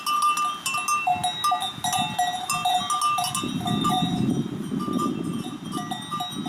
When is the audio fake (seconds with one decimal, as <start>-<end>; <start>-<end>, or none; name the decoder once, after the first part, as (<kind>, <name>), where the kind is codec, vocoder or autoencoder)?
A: none